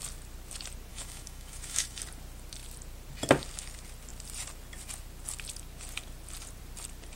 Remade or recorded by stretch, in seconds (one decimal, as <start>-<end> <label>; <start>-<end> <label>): 0.0-0.9 recorded; 0.9-2.0 remade; 2.0-7.2 recorded